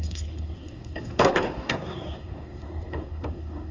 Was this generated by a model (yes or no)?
yes